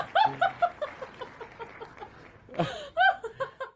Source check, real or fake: real